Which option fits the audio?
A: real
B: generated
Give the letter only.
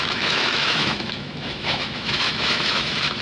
B